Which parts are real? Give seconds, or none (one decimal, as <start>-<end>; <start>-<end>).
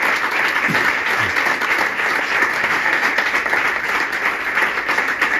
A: 0.0-2.5; 3.1-5.4